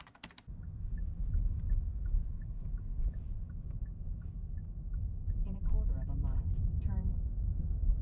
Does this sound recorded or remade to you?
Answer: remade